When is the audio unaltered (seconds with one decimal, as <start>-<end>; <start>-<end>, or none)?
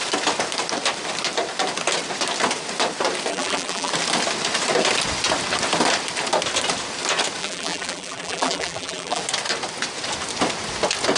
0.0-3.3; 3.9-7.4; 9.2-11.2